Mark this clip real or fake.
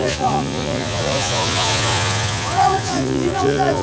fake